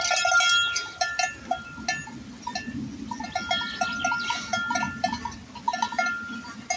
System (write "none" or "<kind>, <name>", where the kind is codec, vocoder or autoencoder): none